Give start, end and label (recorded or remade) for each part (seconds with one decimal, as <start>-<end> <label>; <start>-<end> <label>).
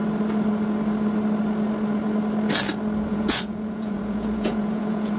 0.0-3.1 recorded; 3.1-5.2 remade